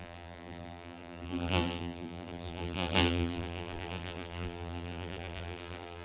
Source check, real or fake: fake